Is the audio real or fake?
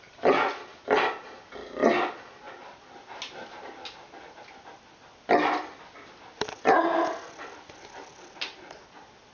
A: real